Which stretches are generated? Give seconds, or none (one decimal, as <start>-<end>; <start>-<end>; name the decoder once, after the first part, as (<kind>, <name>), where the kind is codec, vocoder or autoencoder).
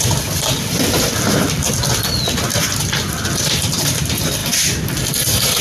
none